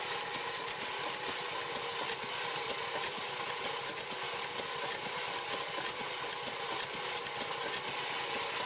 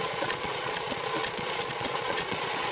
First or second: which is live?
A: first